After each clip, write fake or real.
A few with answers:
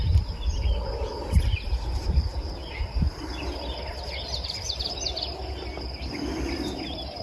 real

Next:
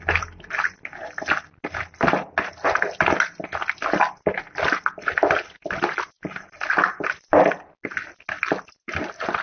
real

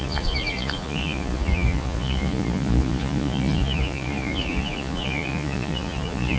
fake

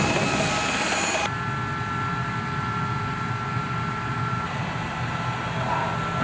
real